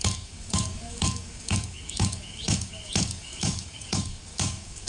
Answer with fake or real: fake